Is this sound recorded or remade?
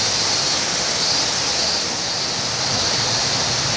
recorded